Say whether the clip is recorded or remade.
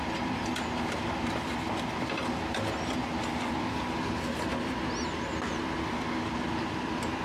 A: recorded